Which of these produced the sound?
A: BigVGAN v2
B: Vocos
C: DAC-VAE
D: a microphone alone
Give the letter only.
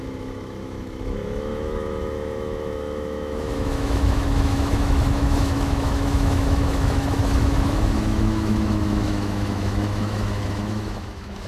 C